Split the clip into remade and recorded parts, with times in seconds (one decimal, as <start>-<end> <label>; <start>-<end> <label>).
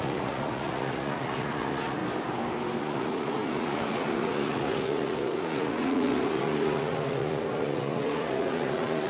0.0-2.0 remade; 2.0-2.8 recorded; 2.8-9.1 remade